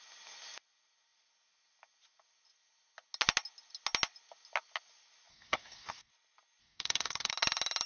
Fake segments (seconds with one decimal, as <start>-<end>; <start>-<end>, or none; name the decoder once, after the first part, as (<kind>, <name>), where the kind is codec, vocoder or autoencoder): 5.3-6.1 (codec, SNAC); 6.6-7.3